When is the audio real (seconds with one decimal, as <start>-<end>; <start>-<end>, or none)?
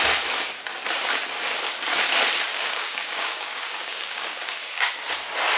0.0-2.5; 4.9-5.6